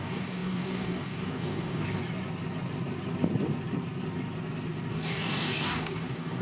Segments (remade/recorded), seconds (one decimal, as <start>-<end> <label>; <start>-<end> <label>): 0.0-2.0 remade; 2.0-4.9 recorded; 4.9-6.4 remade